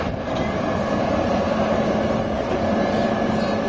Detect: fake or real real